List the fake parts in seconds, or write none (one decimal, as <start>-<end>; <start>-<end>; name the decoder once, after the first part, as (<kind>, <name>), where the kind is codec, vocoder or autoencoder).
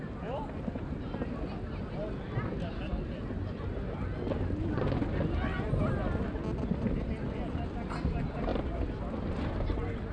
none